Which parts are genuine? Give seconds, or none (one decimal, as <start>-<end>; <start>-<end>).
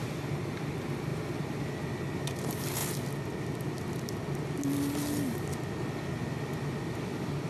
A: 0.0-7.5